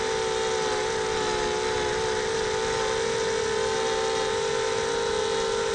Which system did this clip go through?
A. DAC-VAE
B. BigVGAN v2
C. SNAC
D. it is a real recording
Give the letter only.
D